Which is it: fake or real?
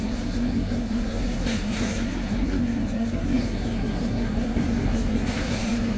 fake